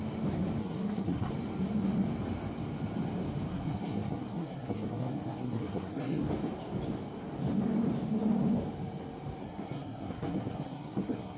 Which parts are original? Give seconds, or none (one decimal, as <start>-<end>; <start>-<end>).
0.0-0.6; 1.3-3.5; 6.2-9.4